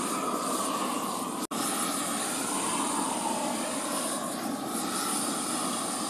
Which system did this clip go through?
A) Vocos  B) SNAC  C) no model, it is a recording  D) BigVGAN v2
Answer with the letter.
C